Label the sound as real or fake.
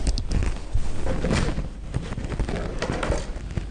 real